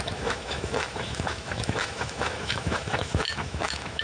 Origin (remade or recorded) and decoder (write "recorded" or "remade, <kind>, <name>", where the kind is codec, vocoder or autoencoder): remade, autoencoder, DAC-VAE